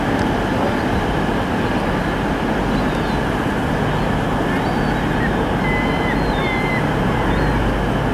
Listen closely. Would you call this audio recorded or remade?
recorded